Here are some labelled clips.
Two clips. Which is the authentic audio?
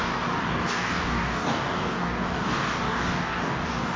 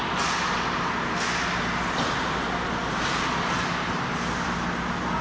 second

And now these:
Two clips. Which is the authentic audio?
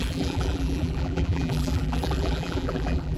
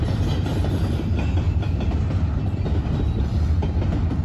second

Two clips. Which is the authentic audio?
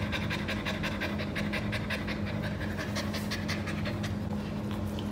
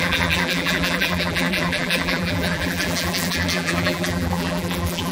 first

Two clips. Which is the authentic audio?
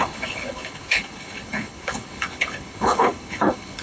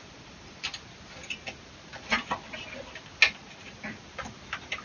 second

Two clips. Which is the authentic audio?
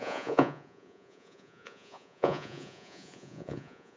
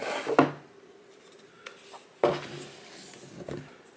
second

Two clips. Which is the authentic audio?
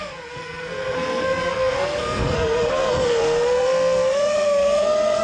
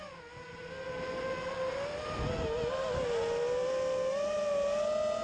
second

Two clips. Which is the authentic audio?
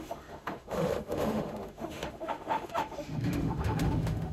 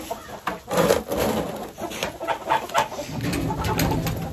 second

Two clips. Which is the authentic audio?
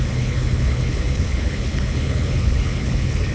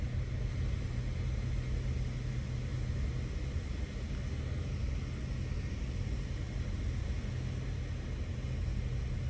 second